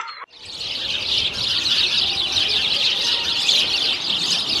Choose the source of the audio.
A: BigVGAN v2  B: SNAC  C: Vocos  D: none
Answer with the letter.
A